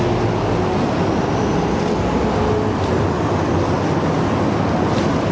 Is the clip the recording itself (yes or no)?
yes